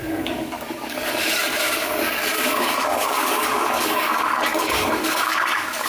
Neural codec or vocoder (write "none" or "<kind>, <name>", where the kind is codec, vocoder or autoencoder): codec, DAC